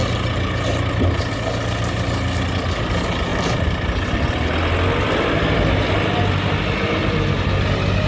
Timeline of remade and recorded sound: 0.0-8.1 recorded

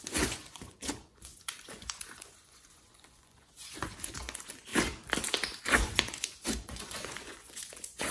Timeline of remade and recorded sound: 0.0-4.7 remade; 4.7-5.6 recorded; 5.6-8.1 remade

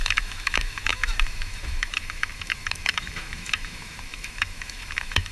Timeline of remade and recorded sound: 0.0-5.3 remade